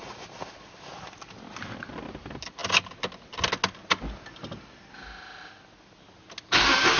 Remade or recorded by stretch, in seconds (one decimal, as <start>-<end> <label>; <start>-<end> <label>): 0.0-7.0 recorded